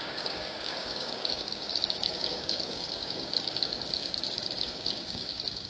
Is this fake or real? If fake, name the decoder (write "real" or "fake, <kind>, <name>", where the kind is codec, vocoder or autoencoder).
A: fake, codec, DAC